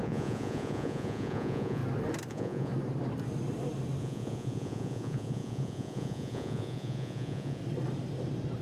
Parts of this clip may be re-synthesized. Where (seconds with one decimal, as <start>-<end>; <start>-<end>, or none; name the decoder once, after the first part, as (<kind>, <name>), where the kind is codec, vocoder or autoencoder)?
0.0-1.8 (vocoder, Vocos); 2.3-2.7; 4.0-7.6